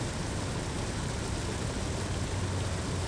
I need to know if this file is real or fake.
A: real